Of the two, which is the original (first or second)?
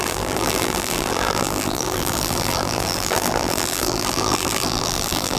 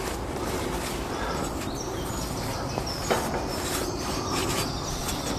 second